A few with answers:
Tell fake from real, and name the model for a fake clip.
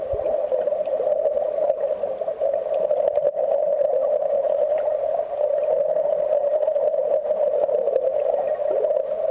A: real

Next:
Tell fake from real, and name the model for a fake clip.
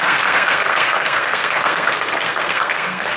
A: fake, codec, SNAC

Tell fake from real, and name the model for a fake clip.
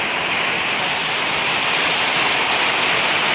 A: real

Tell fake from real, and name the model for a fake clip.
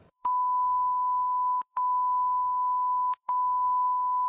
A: fake, codec, SNAC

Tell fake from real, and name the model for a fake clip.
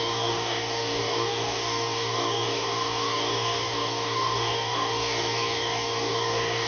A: fake, codec, DAC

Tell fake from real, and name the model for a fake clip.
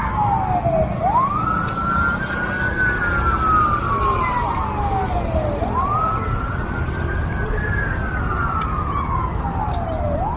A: real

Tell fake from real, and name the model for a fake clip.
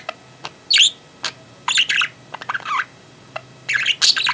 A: real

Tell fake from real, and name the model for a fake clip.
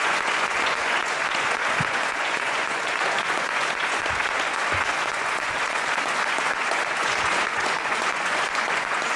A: fake, vocoder, Vocos